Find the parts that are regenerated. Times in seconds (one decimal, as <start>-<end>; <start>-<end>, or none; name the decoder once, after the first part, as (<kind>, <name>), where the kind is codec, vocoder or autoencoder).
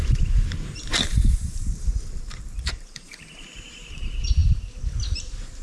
0.0-5.6 (vocoder, BigVGAN v2)